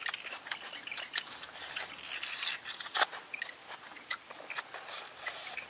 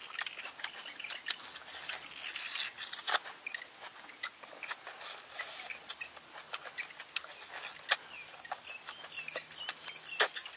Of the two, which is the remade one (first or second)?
first